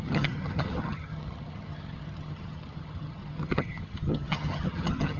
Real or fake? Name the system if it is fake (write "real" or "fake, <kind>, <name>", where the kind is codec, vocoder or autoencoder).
fake, vocoder, HiFi-GAN